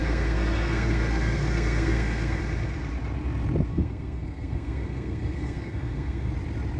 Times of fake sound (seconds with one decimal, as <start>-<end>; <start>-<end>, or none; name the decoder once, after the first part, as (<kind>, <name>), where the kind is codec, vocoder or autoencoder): 0.0-2.4 (codec, SNAC); 3.7-6.3